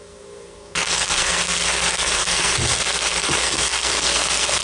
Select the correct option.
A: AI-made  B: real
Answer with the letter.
A